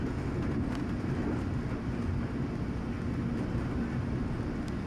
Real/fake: real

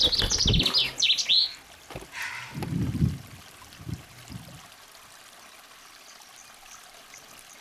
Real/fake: real